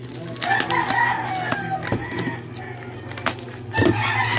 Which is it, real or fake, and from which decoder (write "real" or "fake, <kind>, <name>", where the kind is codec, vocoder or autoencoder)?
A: real